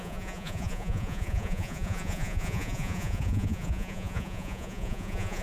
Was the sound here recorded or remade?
remade